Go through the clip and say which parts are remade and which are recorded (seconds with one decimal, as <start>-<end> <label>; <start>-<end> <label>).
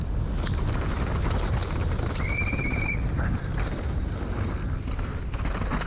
0.0-1.6 recorded; 1.6-4.1 remade; 4.1-5.9 recorded